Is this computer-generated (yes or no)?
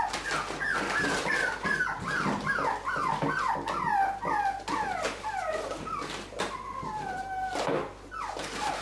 no